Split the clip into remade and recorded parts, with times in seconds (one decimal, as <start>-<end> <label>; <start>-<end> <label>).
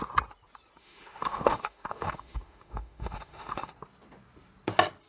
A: 0.0-0.8 recorded; 0.8-3.7 remade; 3.7-5.1 recorded